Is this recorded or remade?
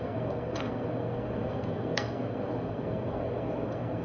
remade